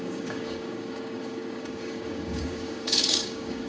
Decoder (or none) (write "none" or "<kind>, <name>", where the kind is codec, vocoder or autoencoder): codec, DAC